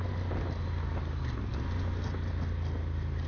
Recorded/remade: recorded